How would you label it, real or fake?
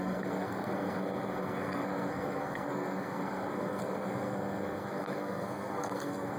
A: fake